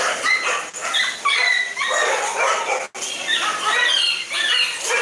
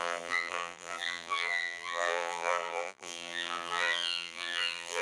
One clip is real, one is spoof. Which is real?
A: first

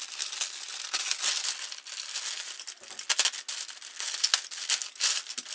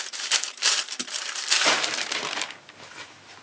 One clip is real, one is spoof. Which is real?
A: first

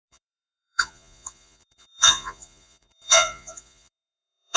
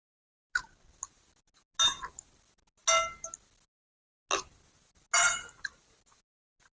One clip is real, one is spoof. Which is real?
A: second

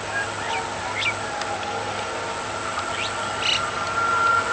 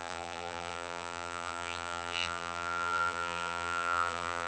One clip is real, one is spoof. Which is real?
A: first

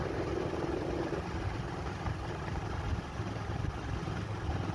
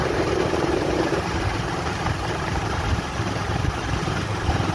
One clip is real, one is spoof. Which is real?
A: first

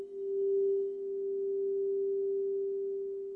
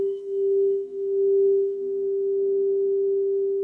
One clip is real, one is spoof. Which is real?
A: first